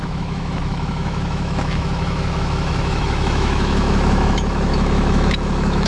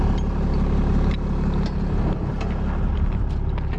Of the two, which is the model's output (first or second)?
first